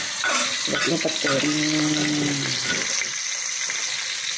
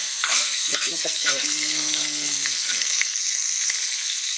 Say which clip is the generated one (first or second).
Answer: second